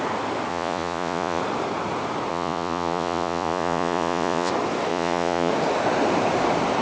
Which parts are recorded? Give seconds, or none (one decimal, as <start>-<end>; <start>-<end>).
0.0-0.5; 1.4-2.3; 4.5-4.9; 5.5-6.8

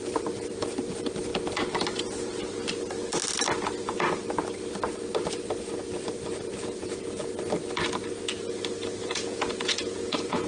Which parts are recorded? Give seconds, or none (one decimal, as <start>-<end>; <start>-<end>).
0.0-6.5; 7.3-9.0